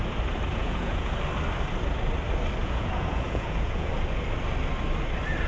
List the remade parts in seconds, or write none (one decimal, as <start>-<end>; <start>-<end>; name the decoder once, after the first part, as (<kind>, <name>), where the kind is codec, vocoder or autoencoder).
0.5-1.1 (vocoder, Vocos); 2.6-3.9